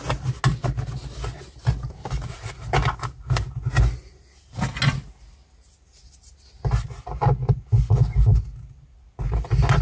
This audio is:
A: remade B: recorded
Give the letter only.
B